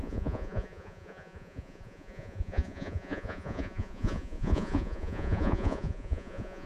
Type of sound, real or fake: fake